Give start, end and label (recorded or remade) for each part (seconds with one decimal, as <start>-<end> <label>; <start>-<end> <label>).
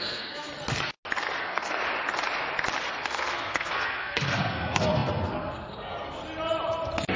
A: 0.0-0.5 remade; 0.5-1.4 recorded; 1.4-1.8 remade; 1.8-2.9 recorded; 2.9-6.2 remade; 6.2-7.2 recorded